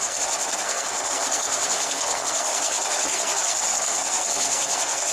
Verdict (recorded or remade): remade